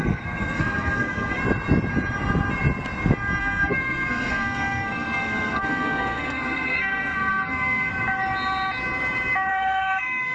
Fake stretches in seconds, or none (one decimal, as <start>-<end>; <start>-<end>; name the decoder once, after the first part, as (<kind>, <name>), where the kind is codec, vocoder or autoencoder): 0.0-1.4 (codec, SNAC); 3.4-7.9; 9.5-10.3